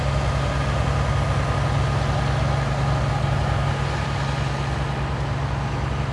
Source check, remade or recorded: recorded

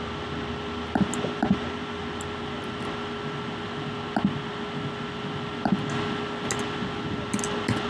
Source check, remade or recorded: recorded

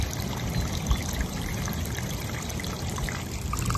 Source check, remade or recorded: recorded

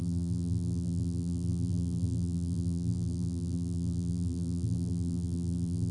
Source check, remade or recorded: remade